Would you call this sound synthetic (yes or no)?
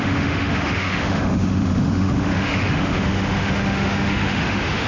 yes